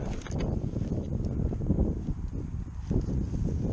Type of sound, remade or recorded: recorded